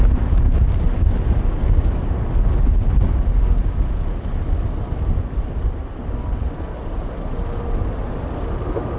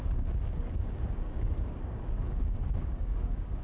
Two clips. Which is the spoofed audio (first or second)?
second